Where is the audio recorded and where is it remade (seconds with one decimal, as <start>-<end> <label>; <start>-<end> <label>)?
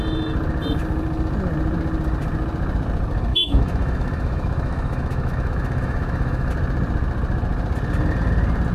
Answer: 0.0-3.3 recorded; 3.3-6.5 remade; 6.5-8.7 recorded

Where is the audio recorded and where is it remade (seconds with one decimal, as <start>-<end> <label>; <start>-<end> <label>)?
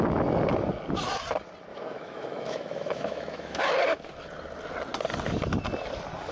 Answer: 0.0-1.7 recorded; 1.7-3.6 remade; 3.6-6.3 recorded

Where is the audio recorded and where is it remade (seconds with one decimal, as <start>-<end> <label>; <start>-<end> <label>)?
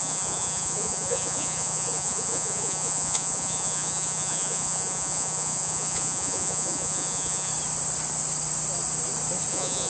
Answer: 0.0-7.5 remade; 7.5-9.5 recorded; 9.5-9.9 remade